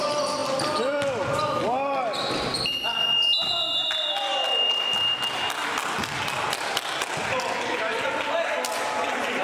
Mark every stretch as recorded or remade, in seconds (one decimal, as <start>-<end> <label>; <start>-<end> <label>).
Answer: 0.0-9.4 recorded